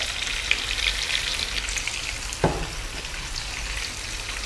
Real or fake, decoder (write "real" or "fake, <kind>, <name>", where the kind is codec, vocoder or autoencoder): real